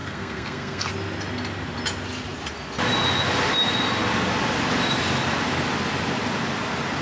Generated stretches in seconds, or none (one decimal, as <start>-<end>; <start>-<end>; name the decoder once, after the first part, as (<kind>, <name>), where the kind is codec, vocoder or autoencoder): 0.0-0.9 (codec, SNAC)